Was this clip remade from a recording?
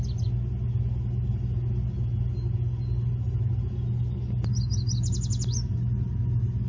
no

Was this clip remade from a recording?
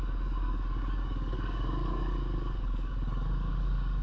yes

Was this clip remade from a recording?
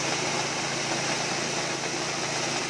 no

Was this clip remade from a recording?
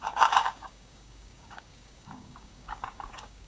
yes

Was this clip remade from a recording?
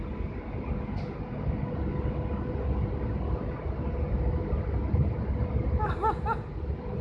no